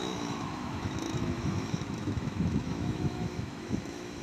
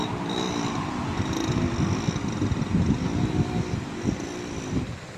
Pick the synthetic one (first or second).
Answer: first